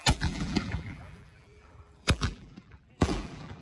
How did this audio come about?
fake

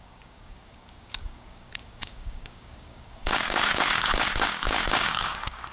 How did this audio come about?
fake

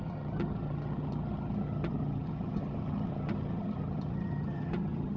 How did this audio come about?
fake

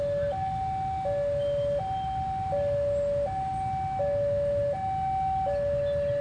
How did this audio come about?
real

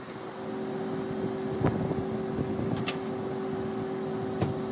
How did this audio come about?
real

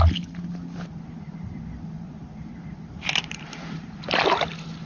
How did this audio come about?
real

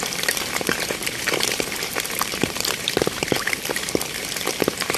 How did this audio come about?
fake